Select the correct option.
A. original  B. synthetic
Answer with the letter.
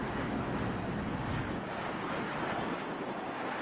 A